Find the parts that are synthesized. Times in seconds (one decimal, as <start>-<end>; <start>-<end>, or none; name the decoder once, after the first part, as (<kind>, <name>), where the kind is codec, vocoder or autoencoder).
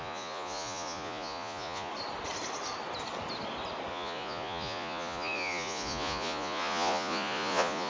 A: 0.0-1.9 (vocoder, Vocos); 3.9-7.9